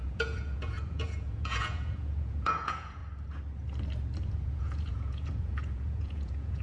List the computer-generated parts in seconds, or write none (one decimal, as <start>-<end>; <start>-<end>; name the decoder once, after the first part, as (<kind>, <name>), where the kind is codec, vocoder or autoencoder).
0.0-3.0 (vocoder, Vocos); 4.3-6.6